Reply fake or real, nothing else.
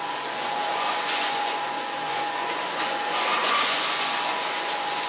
fake